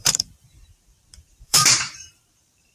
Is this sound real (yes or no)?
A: no